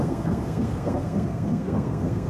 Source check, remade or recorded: remade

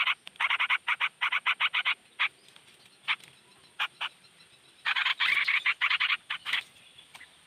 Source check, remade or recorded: recorded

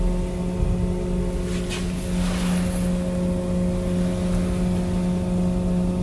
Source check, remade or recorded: recorded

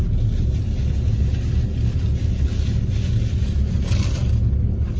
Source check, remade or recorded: recorded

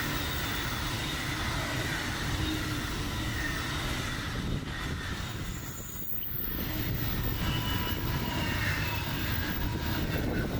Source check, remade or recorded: recorded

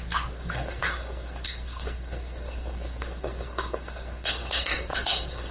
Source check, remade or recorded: remade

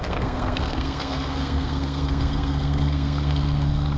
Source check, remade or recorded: remade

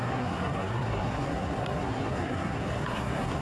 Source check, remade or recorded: remade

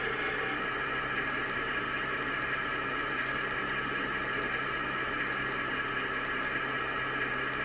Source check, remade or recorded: recorded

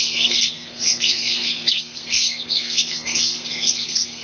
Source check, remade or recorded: remade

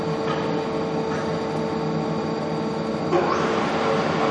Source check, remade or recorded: recorded